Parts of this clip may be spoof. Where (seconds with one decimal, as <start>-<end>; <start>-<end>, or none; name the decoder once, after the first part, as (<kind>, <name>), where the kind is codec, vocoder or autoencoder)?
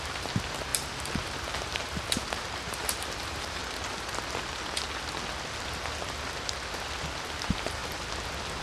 0.0-3.6 (vocoder, BigVGAN v2); 7.3-7.8